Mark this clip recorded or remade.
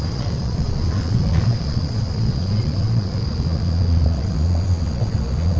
remade